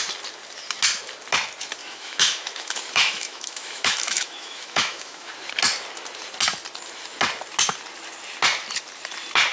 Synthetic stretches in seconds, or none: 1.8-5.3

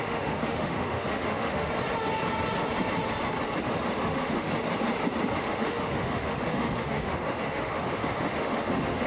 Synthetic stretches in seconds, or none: 0.0-1.7; 3.6-4.5; 5.4-9.1

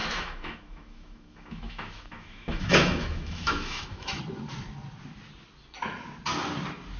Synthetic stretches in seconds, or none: 0.0-4.2